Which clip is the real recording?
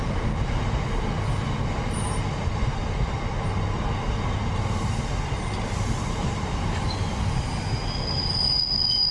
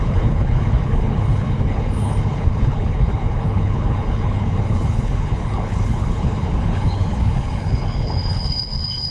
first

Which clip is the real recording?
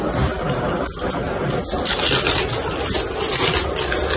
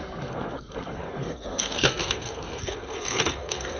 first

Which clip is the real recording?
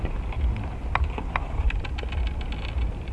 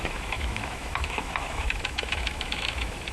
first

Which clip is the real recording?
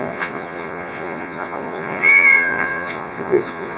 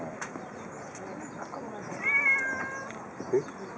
second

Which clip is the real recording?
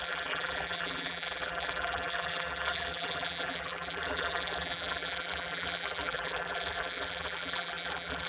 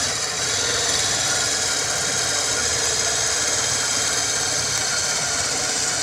second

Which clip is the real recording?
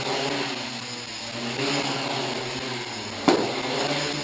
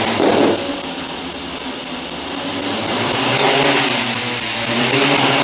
first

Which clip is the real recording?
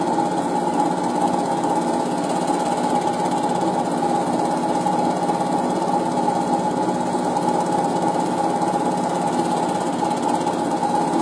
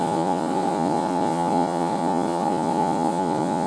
first